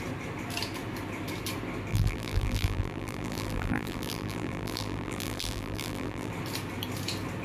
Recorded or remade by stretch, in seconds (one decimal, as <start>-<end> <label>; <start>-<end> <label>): 0.0-1.9 recorded; 1.9-6.3 remade; 6.3-7.4 recorded

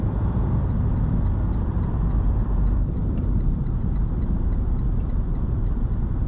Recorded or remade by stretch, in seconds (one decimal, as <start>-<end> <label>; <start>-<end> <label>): 0.0-6.3 remade